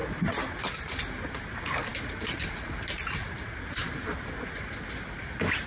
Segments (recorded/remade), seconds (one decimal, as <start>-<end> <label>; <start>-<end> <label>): 0.0-5.7 recorded